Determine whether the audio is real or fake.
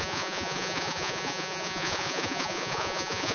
fake